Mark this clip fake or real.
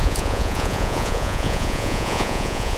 fake